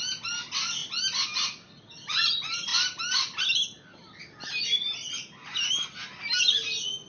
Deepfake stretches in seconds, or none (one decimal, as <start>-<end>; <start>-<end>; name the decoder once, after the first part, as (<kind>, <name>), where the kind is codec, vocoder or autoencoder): none